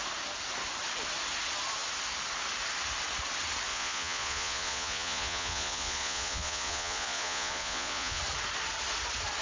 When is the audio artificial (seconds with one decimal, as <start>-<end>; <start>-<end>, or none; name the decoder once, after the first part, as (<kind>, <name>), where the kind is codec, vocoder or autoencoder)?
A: 3.7-8.2 (vocoder, Vocos)